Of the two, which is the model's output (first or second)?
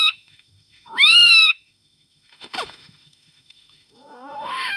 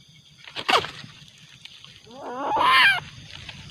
first